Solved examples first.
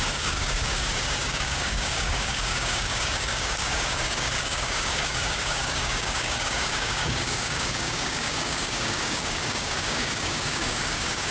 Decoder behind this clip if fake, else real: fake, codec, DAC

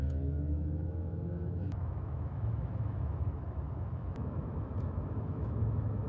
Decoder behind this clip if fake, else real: fake, autoencoder, DAC-VAE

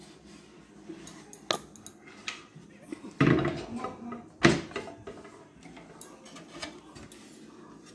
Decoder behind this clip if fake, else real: real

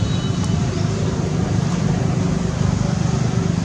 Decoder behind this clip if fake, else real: real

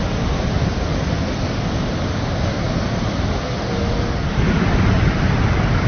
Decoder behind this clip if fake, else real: real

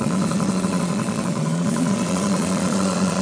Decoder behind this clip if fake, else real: fake, vocoder, Vocos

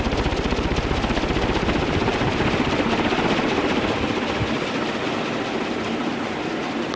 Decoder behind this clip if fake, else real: real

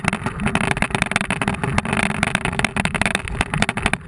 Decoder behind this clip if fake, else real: real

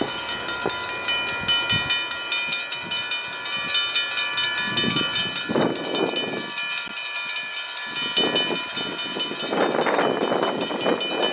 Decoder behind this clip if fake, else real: real